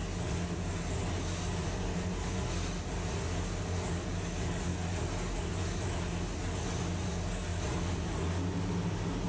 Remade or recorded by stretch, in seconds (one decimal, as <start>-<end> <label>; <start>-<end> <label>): 0.0-9.3 recorded